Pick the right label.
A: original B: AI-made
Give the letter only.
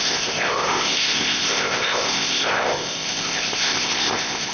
B